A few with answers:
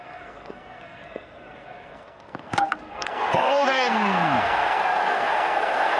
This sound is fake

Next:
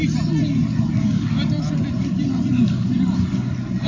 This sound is real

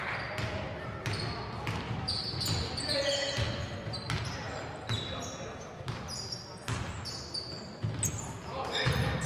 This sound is real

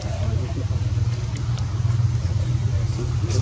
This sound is real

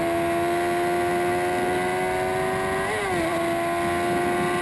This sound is real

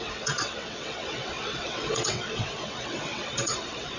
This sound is fake